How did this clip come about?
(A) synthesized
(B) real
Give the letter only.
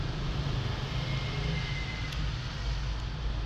B